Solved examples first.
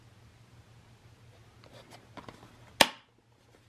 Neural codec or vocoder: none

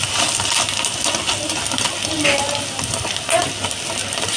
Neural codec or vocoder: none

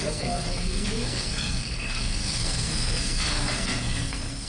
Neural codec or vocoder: codec, SNAC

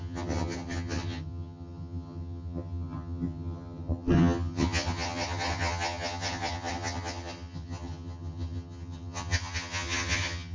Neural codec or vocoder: vocoder, HiFi-GAN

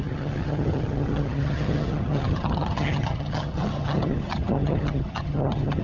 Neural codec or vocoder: vocoder, HiFi-GAN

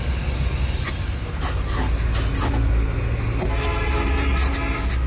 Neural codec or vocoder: none